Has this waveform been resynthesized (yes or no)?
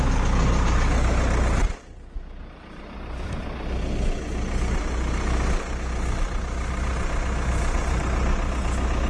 no